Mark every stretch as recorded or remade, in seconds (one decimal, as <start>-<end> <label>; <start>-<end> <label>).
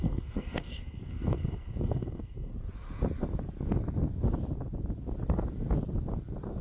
0.0-2.5 remade; 2.5-6.6 recorded